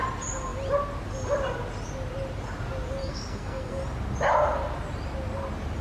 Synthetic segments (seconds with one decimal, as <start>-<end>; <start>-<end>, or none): 3.0-3.8